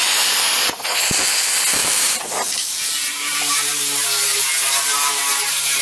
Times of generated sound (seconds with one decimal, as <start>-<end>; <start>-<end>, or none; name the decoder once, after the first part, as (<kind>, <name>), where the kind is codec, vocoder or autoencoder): 1.8-5.2 (vocoder, BigVGAN v2)